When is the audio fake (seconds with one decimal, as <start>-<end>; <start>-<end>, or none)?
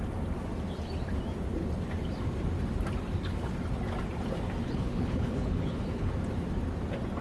4.6-6.1